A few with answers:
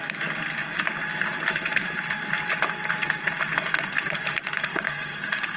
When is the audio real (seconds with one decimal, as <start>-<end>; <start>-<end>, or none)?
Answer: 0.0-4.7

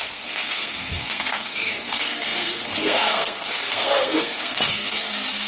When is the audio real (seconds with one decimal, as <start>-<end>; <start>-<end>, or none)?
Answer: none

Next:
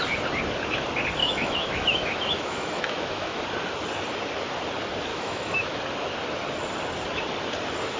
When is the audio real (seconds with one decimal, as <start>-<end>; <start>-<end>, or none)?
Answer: 0.0-1.2; 3.4-5.1; 5.8-8.0